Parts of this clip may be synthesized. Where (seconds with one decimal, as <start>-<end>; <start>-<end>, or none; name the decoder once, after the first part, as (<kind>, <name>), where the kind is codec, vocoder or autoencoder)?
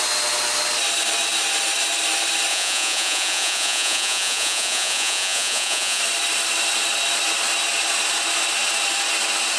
2.5-6.0 (vocoder, Vocos)